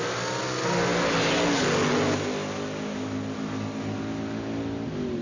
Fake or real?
real